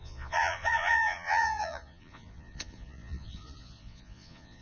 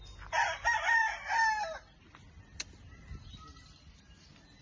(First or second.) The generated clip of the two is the first